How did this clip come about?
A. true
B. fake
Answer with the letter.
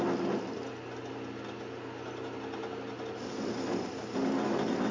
A